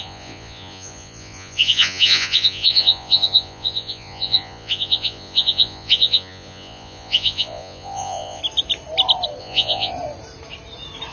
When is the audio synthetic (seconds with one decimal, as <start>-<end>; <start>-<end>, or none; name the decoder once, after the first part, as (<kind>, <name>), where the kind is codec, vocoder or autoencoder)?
0.0-8.4 (vocoder, Vocos); 9.4-9.9